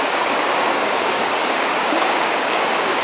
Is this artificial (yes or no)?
yes